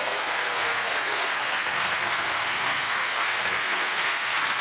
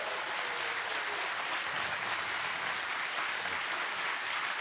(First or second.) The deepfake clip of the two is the first